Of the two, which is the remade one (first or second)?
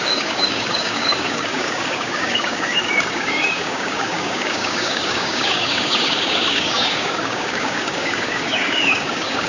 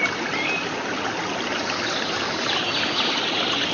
first